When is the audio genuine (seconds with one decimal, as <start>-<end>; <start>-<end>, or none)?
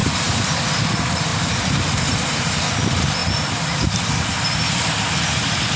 3.2-4.5